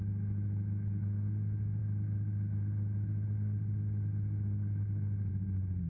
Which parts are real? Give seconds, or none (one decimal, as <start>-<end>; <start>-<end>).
0.0-5.9